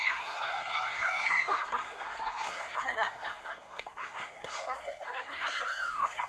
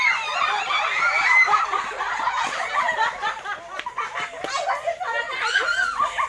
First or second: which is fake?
first